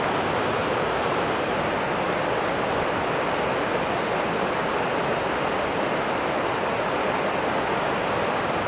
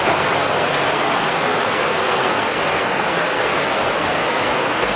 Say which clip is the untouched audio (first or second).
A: first